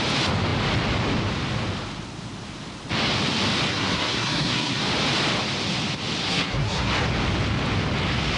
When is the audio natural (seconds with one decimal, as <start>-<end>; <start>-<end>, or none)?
0.0-3.7; 4.8-6.2; 6.9-8.4